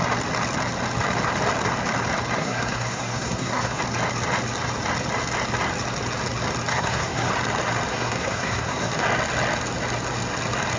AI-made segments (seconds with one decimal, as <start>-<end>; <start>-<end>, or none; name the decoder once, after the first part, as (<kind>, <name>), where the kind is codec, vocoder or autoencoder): 2.4-3.8 (codec, SNAC); 6.7-7.3; 7.9-8.9